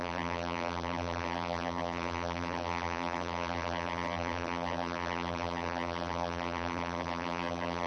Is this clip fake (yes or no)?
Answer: yes